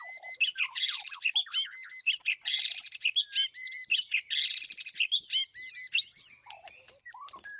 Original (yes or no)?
yes